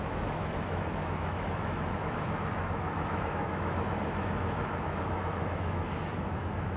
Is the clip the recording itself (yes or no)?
no